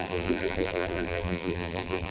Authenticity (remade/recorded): remade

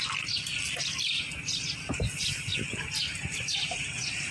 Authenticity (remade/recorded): recorded